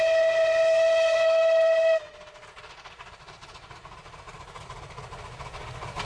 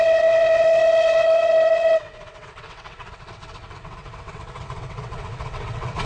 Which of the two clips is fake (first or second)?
second